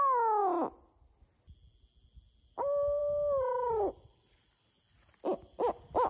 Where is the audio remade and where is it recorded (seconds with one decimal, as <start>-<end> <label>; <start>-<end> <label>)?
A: 0.0-6.1 recorded